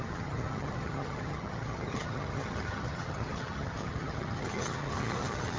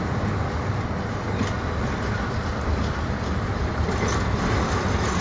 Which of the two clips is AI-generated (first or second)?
first